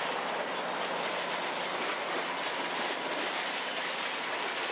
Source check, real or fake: real